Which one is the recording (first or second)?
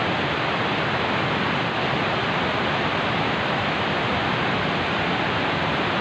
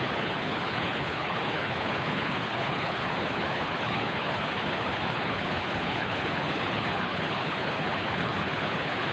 first